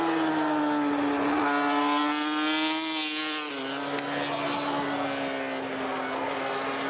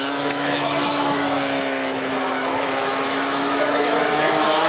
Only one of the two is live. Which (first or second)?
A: first